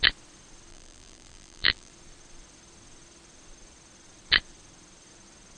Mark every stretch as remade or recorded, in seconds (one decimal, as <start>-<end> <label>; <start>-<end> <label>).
0.0-0.7 recorded; 0.7-1.9 remade; 1.9-5.6 recorded